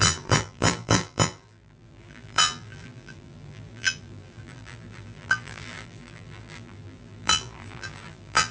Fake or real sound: fake